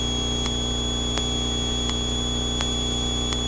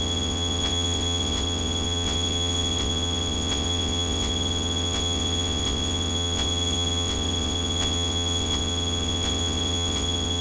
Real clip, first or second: first